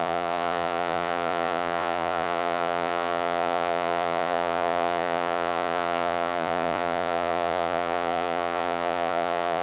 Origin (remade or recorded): remade